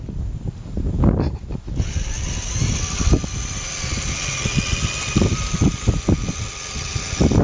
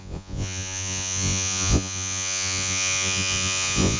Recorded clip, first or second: first